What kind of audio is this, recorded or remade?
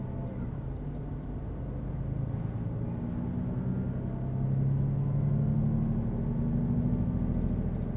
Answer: recorded